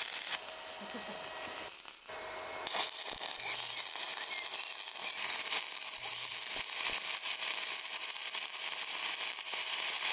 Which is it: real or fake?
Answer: real